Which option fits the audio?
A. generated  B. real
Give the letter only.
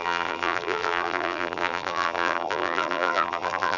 A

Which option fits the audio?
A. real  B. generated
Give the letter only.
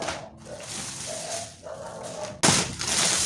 A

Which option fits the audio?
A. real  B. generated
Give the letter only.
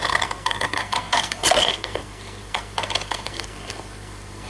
B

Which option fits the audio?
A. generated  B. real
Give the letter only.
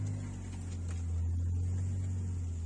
B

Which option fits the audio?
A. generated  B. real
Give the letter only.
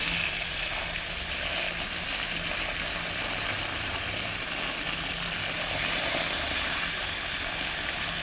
B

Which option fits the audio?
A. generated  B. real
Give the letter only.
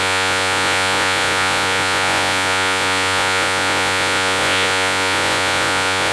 A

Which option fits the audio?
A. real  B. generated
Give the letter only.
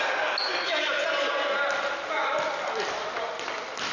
A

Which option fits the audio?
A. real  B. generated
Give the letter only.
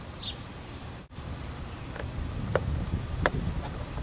B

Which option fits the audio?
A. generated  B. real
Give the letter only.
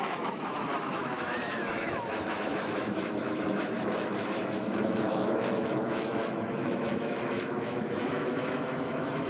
A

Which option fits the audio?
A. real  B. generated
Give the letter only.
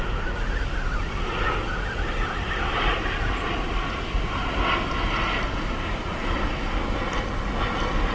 A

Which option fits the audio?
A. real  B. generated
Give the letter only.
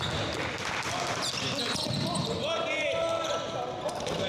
A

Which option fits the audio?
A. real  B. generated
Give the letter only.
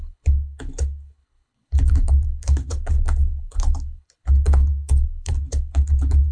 B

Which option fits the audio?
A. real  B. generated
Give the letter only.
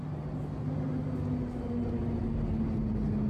A